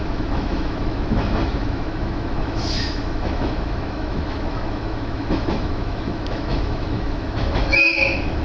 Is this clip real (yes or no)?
no